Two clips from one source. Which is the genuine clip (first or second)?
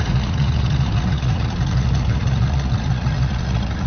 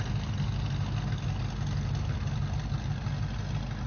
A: second